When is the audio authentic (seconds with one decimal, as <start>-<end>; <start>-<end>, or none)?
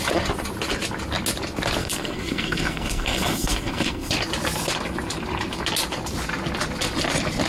0.0-1.8; 4.1-7.5